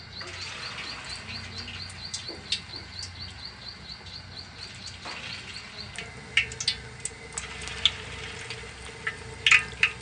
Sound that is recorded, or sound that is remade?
recorded